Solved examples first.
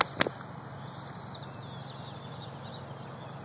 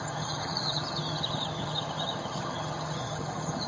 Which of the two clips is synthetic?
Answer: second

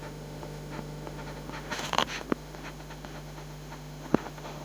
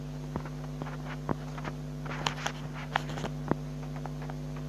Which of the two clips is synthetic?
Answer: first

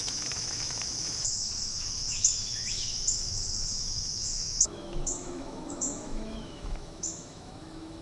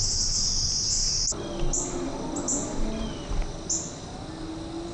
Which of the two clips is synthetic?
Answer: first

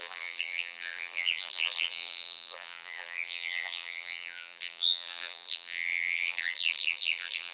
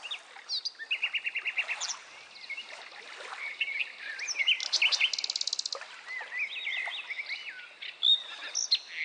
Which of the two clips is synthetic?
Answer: first